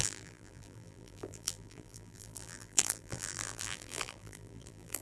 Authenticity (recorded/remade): remade